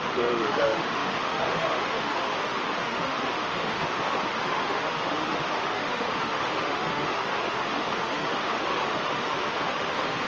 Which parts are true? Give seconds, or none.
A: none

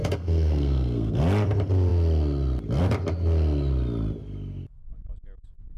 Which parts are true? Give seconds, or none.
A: 1.2-5.8

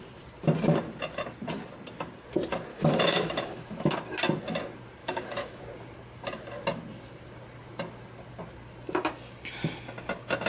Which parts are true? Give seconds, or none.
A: 0.0-2.7; 4.0-5.0; 5.6-10.5

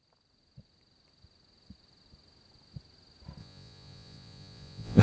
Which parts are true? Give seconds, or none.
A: 0.0-3.4

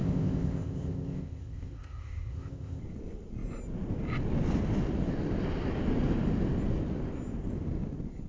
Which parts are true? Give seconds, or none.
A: 2.8-8.3